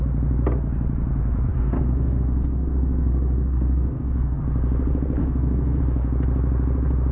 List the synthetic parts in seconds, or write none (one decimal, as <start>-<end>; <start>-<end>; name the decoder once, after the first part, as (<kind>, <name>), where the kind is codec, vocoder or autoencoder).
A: 1.5-4.4 (codec, SNAC); 5.2-5.8